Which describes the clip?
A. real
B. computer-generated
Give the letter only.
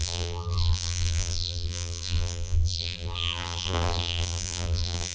B